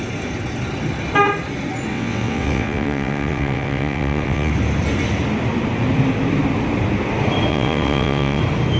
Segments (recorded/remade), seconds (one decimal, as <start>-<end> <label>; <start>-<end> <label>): 0.0-1.9 recorded; 1.9-4.5 remade; 4.5-7.5 recorded; 7.5-8.4 remade; 8.4-8.8 recorded